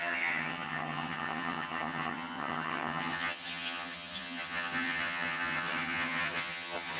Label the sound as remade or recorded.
remade